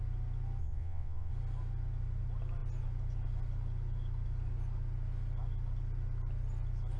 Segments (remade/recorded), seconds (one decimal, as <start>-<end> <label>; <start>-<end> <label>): 0.0-0.6 recorded; 0.6-1.3 remade; 1.3-7.0 recorded